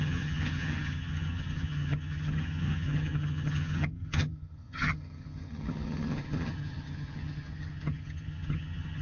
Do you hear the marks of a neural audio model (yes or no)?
yes